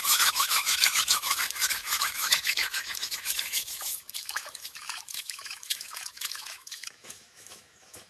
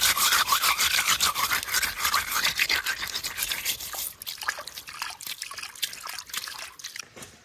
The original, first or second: second